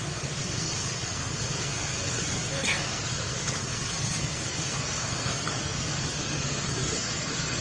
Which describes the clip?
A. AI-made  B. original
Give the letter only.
A